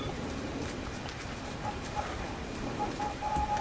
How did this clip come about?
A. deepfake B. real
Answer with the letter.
A